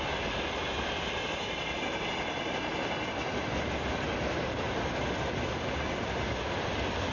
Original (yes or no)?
yes